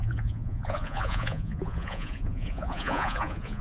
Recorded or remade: remade